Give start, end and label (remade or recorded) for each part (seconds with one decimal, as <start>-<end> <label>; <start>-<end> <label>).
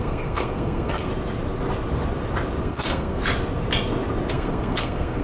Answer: 0.0-1.1 remade; 1.1-2.6 recorded; 2.6-3.2 remade; 3.2-4.3 recorded; 4.3-5.2 remade